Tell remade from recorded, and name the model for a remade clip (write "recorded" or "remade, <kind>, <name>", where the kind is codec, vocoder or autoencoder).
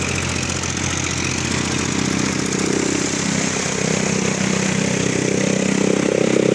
recorded